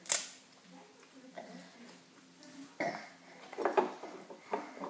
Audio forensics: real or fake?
real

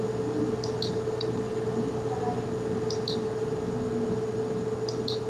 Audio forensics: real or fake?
real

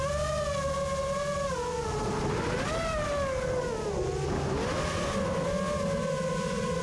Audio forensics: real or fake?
real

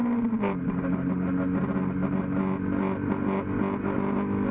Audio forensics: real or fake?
real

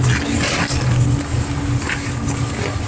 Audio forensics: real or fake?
real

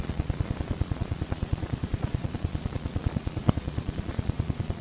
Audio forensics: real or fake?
fake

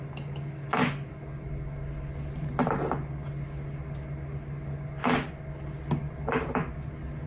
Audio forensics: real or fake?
real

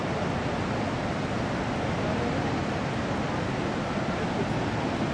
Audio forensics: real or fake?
real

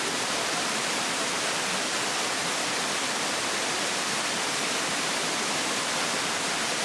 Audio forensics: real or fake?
fake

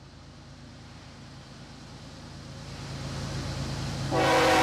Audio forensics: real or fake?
real